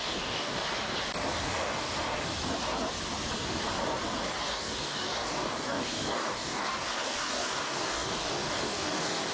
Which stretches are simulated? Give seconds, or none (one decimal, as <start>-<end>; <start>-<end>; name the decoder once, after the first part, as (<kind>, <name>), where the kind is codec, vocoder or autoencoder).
0.0-0.6 (codec, DAC); 1.4-1.9; 4.5-9.3